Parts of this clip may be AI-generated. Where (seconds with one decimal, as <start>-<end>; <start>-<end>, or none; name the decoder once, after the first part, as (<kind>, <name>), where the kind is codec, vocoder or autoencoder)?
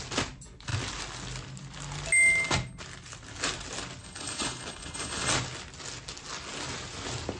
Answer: 4.0-5.3 (codec, HILCodec)